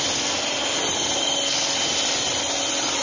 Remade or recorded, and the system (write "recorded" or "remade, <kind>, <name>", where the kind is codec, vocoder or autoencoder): recorded